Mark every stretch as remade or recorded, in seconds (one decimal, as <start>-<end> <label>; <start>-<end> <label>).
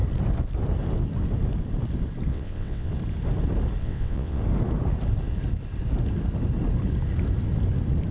0.0-2.3 recorded; 2.3-2.9 remade; 2.9-3.8 recorded; 3.8-4.4 remade; 4.4-8.1 recorded